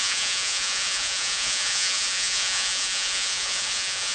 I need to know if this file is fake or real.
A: fake